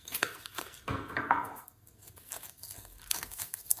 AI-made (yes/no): yes